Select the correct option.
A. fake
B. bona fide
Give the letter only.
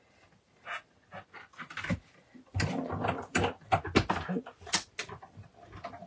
B